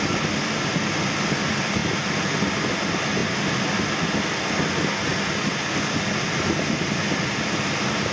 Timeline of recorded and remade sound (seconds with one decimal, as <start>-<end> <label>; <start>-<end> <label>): 0.0-8.1 recorded